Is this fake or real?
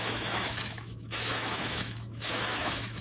fake